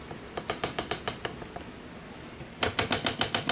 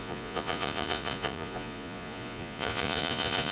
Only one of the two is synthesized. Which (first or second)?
second